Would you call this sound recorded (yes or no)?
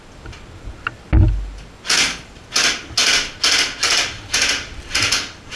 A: yes